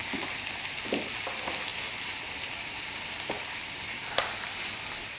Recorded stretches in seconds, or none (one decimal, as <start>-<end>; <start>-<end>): 0.8-1.7; 4.8-5.2